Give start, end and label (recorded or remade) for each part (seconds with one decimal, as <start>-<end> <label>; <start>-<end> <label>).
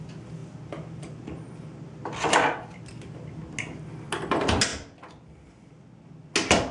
0.0-6.7 recorded